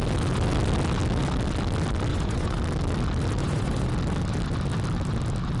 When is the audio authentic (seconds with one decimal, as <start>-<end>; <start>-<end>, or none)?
0.0-2.1; 2.6-3.4; 3.9-5.6